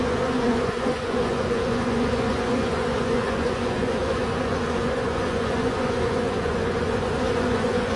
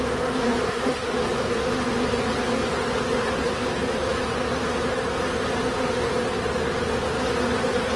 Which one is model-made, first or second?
first